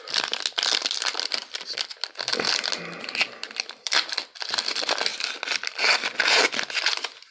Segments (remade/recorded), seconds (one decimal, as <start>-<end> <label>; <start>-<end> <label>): 0.0-7.3 recorded